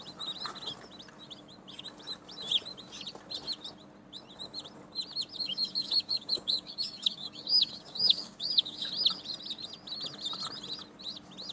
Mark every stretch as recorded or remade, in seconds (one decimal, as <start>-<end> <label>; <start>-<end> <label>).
0.0-5.4 recorded; 5.4-8.9 remade; 8.9-11.5 recorded